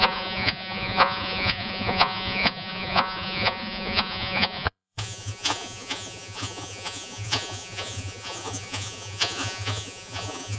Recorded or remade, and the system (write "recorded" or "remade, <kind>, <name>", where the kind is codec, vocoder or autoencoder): remade, vocoder, Vocos